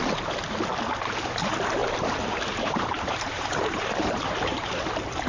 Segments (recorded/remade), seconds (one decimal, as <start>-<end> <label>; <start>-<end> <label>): 0.0-1.8 recorded; 1.8-5.3 remade